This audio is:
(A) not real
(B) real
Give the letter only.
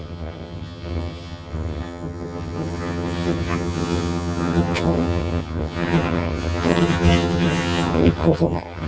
A